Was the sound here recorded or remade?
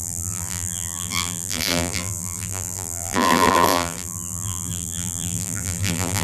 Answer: remade